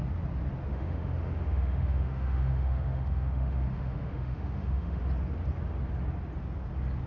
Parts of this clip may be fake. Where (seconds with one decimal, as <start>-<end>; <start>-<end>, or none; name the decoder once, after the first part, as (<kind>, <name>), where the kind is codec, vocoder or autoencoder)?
0.7-5.0 (autoencoder, DAC-VAE)